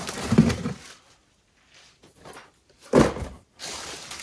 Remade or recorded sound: recorded